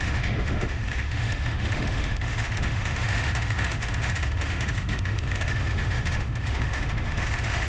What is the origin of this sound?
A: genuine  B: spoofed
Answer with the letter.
B